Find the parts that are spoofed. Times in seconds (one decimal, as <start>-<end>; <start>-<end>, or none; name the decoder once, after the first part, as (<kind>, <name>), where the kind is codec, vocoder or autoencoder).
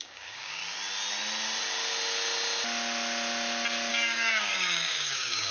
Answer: 0.0-0.6 (codec, DAC); 3.9-5.5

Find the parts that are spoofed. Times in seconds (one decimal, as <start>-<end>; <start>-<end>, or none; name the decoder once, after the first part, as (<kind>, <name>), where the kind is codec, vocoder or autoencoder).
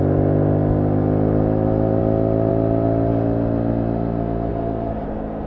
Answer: 4.5-5.5 (vocoder, BigVGAN v2)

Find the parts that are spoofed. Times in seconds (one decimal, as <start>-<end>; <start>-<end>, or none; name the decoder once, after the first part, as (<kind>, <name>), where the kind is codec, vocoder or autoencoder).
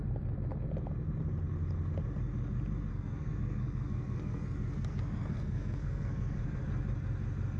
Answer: 2.9-6.6 (codec, SNAC)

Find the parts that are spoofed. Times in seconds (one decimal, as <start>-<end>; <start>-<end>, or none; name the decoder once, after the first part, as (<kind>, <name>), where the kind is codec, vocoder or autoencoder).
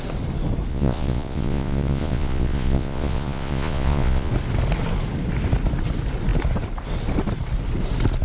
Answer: 0.7-4.3 (vocoder, Vocos)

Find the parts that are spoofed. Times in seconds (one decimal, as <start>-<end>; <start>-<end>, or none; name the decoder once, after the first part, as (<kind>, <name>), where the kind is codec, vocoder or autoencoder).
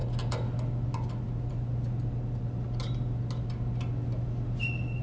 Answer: none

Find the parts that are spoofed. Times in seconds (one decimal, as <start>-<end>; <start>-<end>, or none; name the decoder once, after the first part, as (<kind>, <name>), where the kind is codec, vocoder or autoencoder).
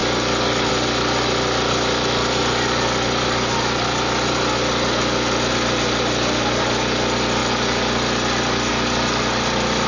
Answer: none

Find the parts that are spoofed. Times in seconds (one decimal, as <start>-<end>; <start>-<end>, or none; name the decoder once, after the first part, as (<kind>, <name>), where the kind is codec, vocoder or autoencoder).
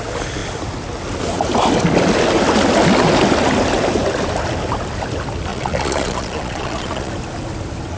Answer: 5.5-7.1 (vocoder, Vocos)